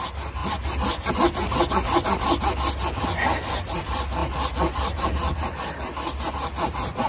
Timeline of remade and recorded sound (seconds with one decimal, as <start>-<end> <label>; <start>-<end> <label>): 0.0-7.1 recorded